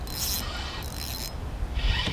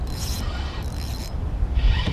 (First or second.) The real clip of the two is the first